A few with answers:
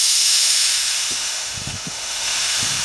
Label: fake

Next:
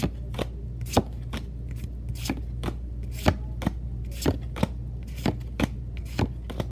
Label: real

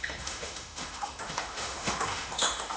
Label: fake